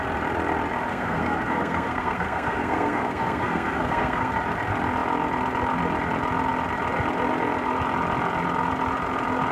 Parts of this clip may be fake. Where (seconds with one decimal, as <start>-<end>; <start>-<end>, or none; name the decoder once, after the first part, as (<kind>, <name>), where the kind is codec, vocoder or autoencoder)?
0.9-4.3 (codec, SNAC)